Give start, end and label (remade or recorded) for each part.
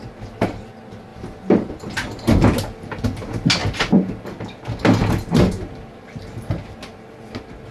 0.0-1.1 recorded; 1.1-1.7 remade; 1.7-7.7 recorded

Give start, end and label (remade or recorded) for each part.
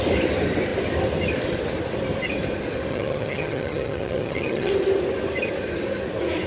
0.0-2.9 recorded; 2.9-4.7 remade; 4.7-6.5 recorded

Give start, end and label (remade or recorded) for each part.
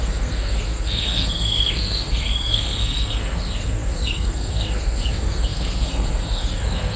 0.0-7.0 remade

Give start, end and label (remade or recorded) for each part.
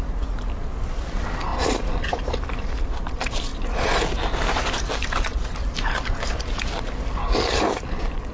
0.0-3.5 remade; 3.5-4.7 recorded; 4.7-8.3 remade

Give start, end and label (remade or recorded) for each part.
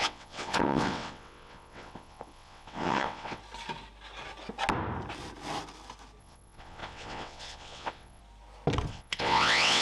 0.0-3.4 remade; 3.4-6.2 recorded; 6.2-8.2 remade; 8.2-8.9 recorded; 8.9-9.8 remade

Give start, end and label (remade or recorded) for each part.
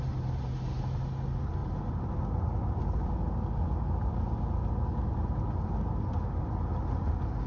0.0-7.5 recorded